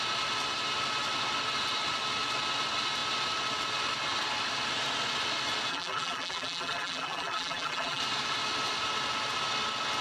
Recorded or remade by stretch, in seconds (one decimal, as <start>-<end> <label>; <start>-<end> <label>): 0.0-5.7 recorded; 5.7-8.0 remade; 8.0-10.0 recorded